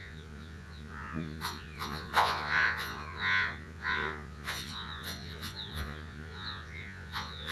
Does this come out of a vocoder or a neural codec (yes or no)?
yes